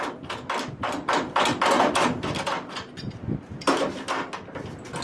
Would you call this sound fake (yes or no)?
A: no